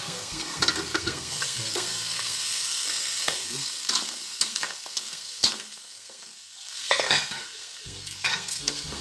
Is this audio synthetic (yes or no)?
yes